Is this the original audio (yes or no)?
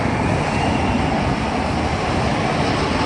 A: yes